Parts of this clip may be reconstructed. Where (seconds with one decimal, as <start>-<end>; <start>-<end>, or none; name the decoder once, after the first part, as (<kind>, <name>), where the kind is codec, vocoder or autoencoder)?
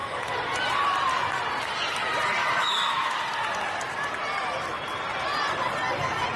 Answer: 2.4-3.2 (autoencoder, DAC-VAE)